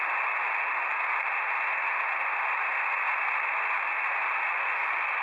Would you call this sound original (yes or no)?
yes